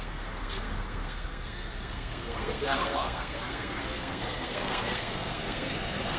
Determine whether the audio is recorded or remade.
remade